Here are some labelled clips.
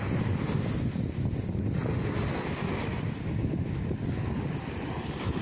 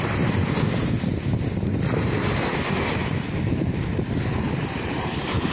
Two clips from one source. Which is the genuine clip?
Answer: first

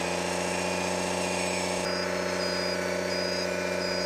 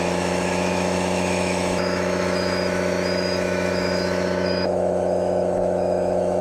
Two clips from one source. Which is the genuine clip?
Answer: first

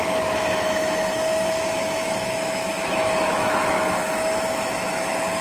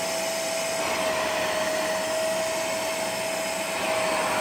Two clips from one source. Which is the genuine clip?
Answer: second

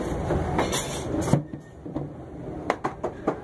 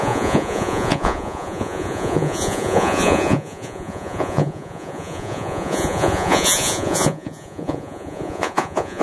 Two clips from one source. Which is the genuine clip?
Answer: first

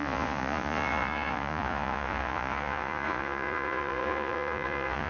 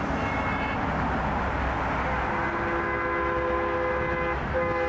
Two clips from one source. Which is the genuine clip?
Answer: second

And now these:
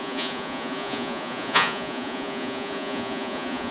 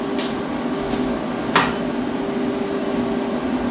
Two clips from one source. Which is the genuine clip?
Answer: second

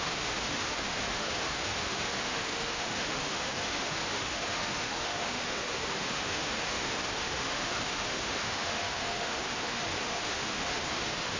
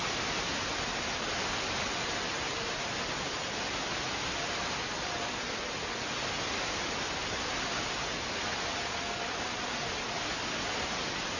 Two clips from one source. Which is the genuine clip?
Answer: second